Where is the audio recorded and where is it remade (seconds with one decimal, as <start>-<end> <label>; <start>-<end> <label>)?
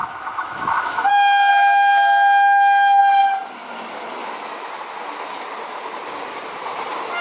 0.0-1.1 remade; 1.1-1.5 recorded; 1.5-3.0 remade; 3.0-4.2 recorded; 4.2-4.7 remade; 4.7-7.2 recorded